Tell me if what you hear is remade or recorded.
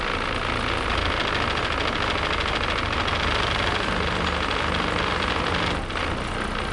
recorded